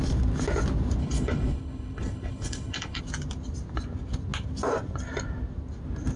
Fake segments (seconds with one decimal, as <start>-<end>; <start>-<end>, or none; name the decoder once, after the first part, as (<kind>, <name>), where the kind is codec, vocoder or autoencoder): 1.0-3.0 (codec, HILCodec)